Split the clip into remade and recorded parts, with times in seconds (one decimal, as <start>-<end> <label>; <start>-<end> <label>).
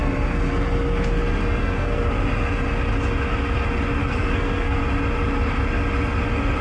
0.0-1.6 recorded; 1.6-2.1 remade; 2.1-4.0 recorded; 4.0-4.8 remade; 4.8-6.6 recorded